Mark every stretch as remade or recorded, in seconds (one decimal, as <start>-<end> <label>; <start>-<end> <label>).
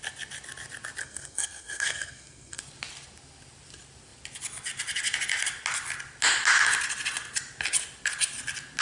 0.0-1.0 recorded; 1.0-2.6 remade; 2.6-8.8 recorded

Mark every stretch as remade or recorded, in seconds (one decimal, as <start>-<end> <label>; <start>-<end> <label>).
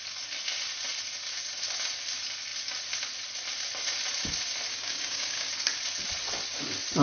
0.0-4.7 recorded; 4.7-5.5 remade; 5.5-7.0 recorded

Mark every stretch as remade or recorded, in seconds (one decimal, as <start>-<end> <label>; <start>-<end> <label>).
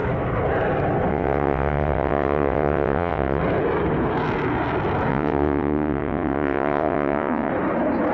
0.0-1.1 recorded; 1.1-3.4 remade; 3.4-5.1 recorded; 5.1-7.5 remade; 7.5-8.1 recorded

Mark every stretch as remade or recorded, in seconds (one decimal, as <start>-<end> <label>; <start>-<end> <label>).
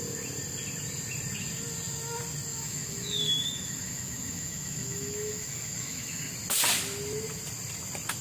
0.0-2.5 recorded; 2.5-6.3 remade; 6.3-8.2 recorded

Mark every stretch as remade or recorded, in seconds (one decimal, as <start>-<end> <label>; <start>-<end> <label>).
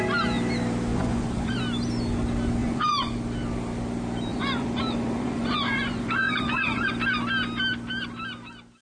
0.0-0.9 recorded; 0.9-1.6 remade; 1.6-2.6 recorded; 2.6-3.1 remade; 3.1-4.3 recorded; 4.3-6.9 remade; 6.9-8.8 recorded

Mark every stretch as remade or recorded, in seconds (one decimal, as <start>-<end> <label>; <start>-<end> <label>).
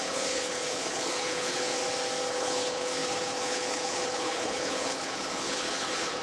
0.0-1.8 remade; 1.8-2.3 recorded; 2.3-6.2 remade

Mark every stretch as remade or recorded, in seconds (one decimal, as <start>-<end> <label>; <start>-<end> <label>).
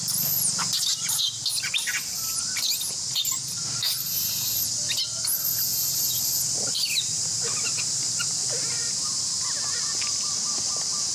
0.0-11.1 recorded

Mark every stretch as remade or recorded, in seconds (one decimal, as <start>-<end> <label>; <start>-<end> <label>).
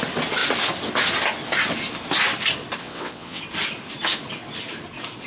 0.0-2.8 recorded; 2.8-3.4 remade; 3.4-5.3 recorded